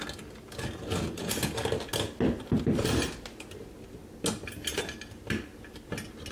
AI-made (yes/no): no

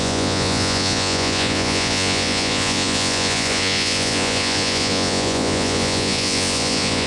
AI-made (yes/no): yes